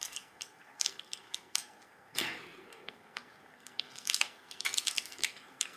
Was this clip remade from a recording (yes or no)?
yes